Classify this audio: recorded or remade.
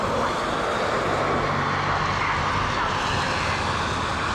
recorded